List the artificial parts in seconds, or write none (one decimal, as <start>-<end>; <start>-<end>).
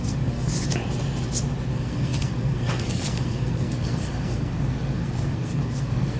0.0-0.5; 1.7-6.2